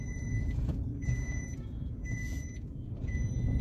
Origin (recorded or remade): remade